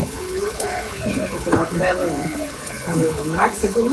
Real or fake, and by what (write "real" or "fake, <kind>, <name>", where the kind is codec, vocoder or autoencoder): fake, codec, HILCodec